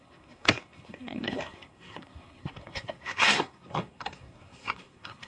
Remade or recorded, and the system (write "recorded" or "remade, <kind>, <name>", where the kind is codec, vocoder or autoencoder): remade, codec, SNAC